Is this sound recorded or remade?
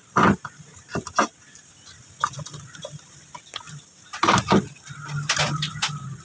recorded